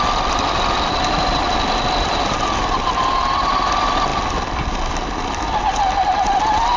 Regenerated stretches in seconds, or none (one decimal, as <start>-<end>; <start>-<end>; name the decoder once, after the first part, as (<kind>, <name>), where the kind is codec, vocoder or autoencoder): none